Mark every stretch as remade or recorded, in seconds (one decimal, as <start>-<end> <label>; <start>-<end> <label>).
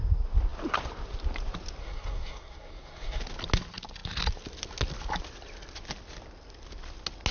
0.0-1.8 recorded; 1.8-3.2 remade; 3.2-7.3 recorded